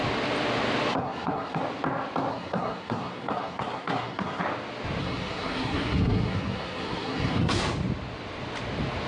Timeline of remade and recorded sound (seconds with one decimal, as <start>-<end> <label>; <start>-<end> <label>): 0.0-0.9 recorded; 0.9-1.6 remade; 1.6-2.3 recorded; 2.3-4.4 remade; 4.4-5.0 recorded; 5.0-7.6 remade; 7.6-9.1 recorded